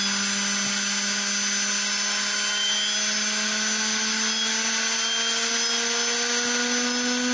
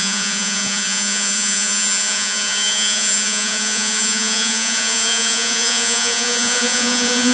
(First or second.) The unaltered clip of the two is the first